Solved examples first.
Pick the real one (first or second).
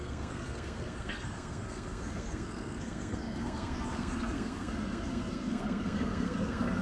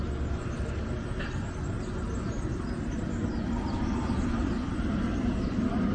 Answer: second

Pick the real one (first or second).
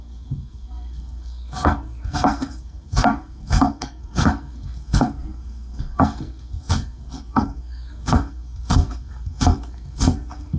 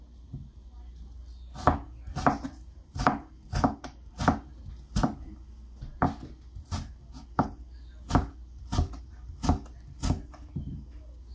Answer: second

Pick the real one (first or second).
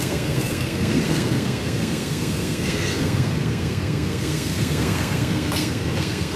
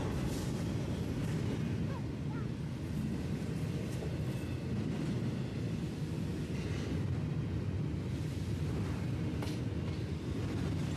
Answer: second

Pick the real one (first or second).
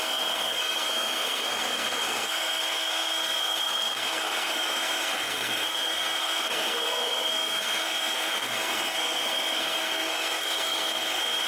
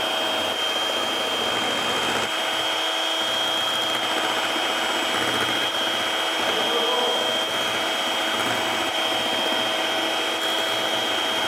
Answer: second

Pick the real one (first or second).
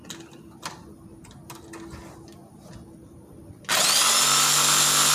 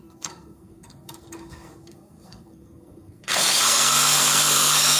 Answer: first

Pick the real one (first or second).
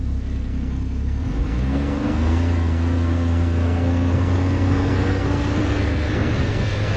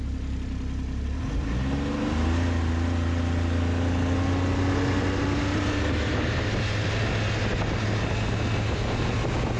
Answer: second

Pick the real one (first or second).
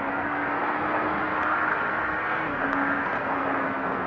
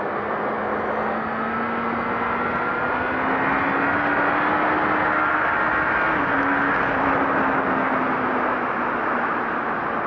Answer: second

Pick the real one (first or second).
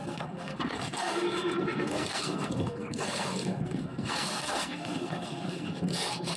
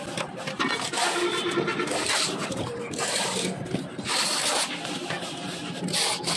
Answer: second